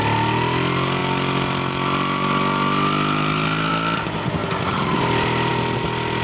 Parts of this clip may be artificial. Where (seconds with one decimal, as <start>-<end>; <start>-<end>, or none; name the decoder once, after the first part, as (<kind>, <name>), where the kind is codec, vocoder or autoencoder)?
4.4-5.5 (vocoder, BigVGAN v2)